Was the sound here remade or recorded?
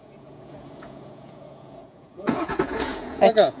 remade